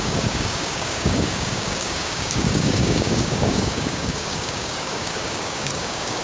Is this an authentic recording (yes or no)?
no